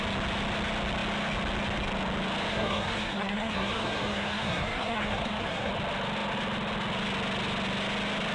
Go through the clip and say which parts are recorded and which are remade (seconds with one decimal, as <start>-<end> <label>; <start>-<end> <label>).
0.0-2.5 recorded; 2.5-5.7 remade; 5.7-8.3 recorded